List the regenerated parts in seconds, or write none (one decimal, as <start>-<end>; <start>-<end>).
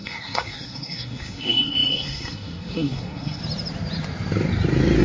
0.0-3.4